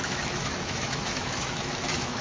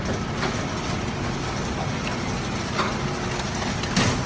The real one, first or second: second